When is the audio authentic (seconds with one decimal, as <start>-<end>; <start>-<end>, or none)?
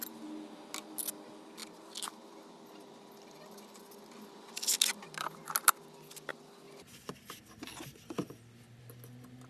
0.0-9.5